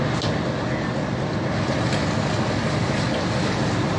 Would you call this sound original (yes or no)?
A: yes